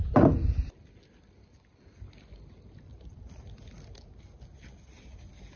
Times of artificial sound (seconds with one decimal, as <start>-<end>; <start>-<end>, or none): none